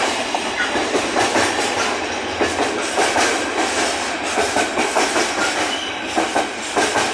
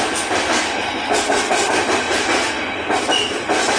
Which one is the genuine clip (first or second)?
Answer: second